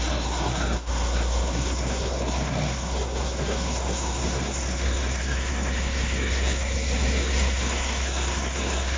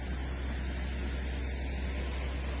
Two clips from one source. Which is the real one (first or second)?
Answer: second